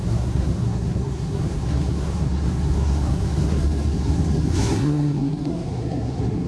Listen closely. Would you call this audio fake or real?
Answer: fake